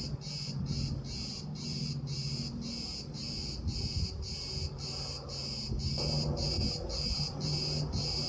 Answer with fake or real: real